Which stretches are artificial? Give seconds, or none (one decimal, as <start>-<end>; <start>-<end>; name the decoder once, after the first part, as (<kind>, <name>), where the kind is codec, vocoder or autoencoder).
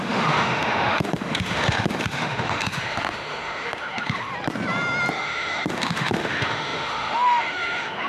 0.0-4.3 (autoencoder, DAC-VAE); 5.1-8.1